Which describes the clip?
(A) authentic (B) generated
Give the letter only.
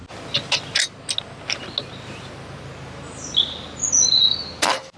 A